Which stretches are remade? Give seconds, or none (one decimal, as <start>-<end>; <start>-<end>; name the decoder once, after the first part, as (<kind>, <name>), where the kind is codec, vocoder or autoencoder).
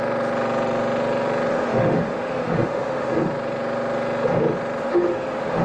1.5-3.1 (autoencoder, DAC-VAE); 4.8-5.6